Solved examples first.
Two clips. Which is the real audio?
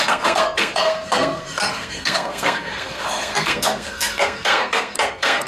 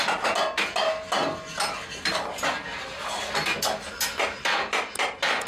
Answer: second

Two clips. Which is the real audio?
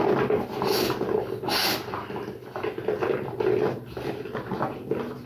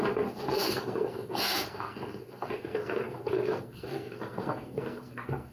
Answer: first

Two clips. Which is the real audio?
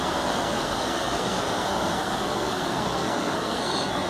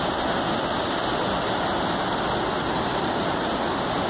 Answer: second